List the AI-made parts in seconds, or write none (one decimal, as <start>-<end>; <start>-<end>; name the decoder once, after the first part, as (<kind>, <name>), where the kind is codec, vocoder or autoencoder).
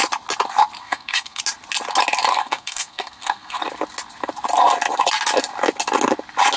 0.8-1.4 (codec, SNAC); 2.3-3.6